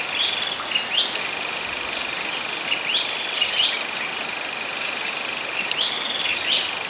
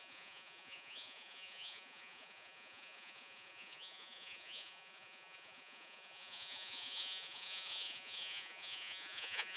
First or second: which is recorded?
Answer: first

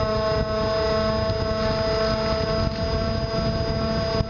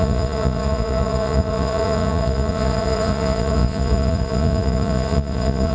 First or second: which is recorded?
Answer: first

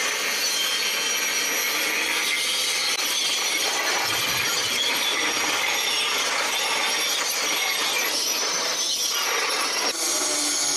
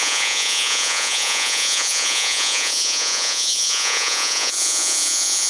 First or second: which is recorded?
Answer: first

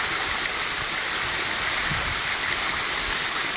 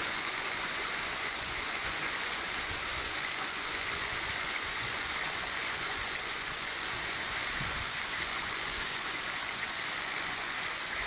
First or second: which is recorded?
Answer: first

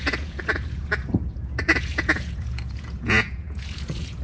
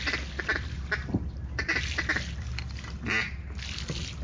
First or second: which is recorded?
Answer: second